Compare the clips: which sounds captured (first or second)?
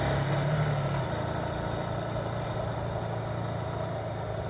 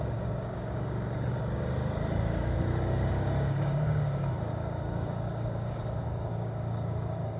first